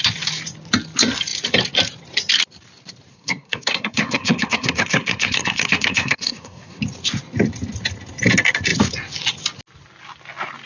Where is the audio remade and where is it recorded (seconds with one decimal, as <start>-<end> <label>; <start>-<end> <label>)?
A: 0.0-3.1 recorded; 3.1-6.8 remade; 6.8-10.7 recorded